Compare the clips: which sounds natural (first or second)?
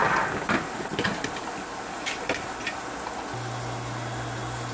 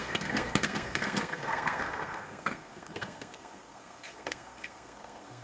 first